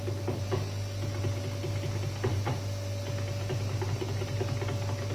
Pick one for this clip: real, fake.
real